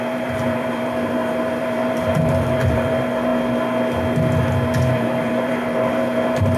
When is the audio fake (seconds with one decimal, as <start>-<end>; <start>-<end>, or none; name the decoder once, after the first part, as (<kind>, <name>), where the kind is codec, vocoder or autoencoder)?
0.0-3.3 (vocoder, BigVGAN v2); 4.9-6.6